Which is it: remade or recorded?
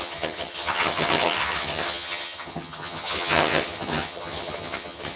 remade